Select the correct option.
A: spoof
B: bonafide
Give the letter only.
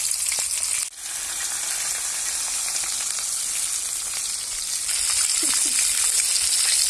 B